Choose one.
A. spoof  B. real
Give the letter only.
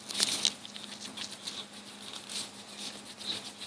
B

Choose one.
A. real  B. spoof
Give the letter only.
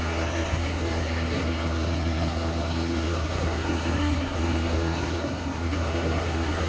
B